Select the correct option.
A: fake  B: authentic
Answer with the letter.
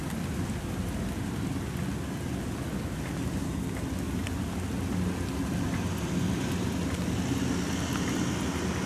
B